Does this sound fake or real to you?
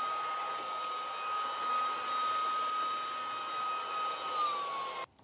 real